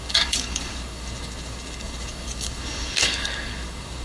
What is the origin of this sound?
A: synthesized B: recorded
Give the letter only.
A